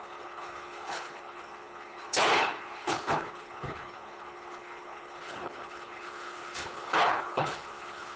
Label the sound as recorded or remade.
remade